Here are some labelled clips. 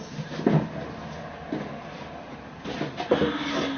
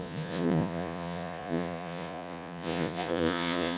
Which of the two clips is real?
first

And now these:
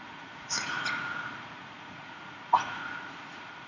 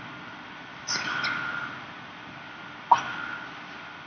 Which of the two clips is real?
second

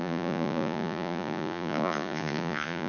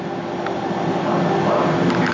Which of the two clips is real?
second